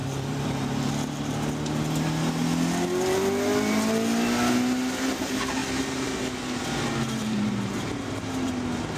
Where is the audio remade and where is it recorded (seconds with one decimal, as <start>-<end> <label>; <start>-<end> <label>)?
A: 0.0-0.9 remade; 0.9-5.6 recorded; 5.6-6.1 remade; 6.1-7.2 recorded; 7.2-8.5 remade; 8.5-9.0 recorded